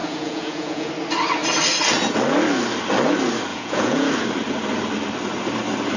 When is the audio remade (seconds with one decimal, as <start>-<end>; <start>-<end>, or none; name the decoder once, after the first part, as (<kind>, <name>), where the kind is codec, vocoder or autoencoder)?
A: 0.0-0.9 (vocoder, Vocos); 3.5-4.1